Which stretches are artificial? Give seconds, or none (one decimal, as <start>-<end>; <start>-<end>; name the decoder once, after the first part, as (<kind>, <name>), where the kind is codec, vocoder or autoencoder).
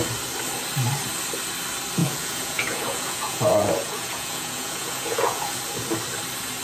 2.0-5.6 (vocoder, Vocos)